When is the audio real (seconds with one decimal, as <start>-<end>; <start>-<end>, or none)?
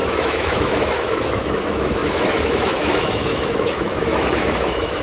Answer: none